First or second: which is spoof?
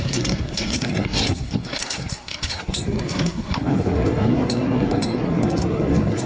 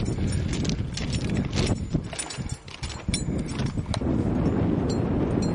first